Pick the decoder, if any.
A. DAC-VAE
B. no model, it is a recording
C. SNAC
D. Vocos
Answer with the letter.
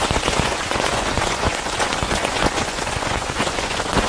D